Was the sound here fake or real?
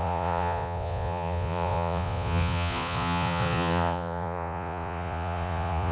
fake